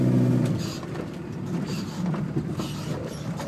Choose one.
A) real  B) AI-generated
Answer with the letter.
B